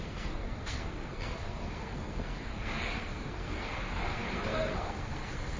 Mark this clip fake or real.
fake